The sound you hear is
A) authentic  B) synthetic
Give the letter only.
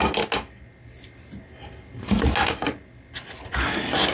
A